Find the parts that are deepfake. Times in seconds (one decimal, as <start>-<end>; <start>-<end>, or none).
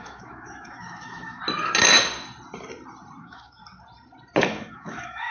0.0-1.4; 3.2-3.6; 4.4-5.3